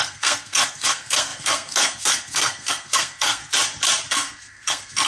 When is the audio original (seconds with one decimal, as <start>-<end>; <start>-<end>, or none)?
3.4-4.1